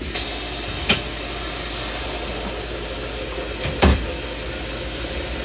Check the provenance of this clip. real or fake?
real